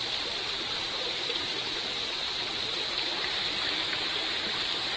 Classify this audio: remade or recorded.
remade